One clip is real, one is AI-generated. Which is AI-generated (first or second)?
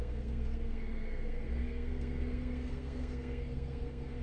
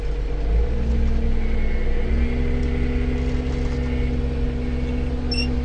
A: first